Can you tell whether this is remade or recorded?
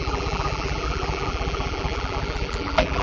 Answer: remade